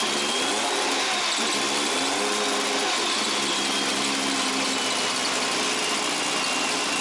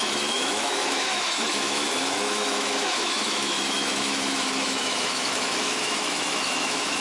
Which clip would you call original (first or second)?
first